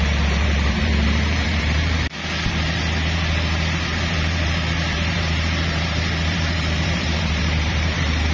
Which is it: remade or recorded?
remade